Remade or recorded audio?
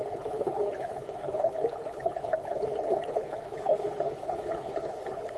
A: remade